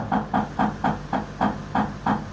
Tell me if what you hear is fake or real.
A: real